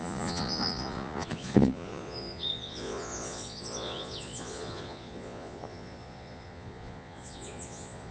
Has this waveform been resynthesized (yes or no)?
yes